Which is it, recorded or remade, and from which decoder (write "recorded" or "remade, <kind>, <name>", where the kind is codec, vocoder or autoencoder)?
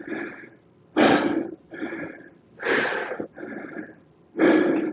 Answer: recorded